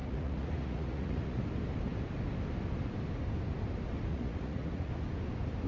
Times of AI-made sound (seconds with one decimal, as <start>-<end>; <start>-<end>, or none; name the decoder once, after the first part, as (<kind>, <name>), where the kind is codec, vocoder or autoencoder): 0.0-1.4 (vocoder, Vocos); 4.1-4.9